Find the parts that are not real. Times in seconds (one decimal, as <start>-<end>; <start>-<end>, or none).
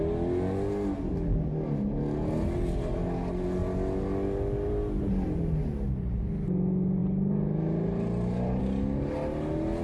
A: none